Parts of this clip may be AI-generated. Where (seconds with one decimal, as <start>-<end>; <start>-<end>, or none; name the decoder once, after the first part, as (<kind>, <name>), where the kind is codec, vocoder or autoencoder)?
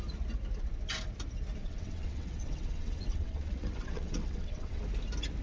1.6-4.8 (vocoder, WaveNeXt)